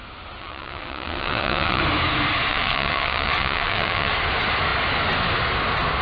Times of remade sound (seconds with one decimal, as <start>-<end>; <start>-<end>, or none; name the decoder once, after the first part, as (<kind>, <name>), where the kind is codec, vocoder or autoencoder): 0.4-1.8 (vocoder, WaveNeXt); 2.5-4.1